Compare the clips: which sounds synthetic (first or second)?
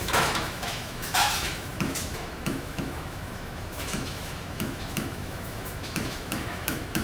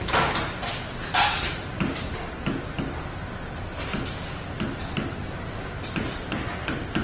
first